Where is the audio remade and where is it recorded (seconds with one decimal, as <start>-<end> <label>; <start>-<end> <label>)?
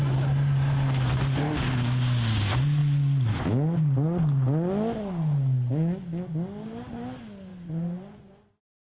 0.0-7.5 recorded; 7.5-8.4 remade; 8.4-8.9 recorded